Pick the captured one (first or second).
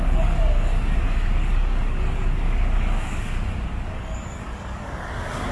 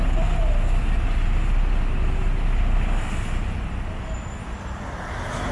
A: second